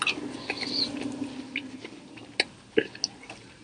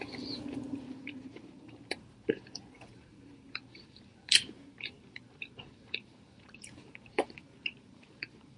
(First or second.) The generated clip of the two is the second